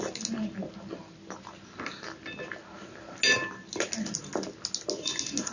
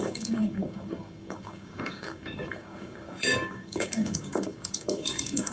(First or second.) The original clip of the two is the first